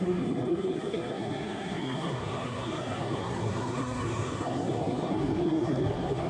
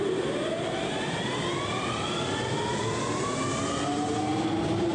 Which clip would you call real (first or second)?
second